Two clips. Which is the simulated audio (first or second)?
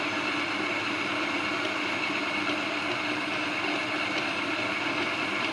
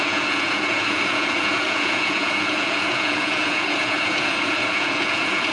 second